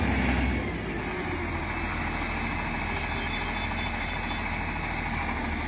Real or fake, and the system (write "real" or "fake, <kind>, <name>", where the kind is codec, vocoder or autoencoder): real